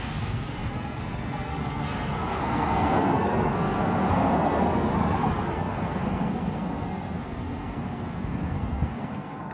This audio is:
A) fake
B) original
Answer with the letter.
A